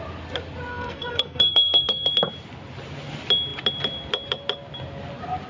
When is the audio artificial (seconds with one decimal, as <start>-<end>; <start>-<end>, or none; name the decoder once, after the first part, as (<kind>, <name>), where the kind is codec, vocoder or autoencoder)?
0.7-2.1 (codec, SNAC)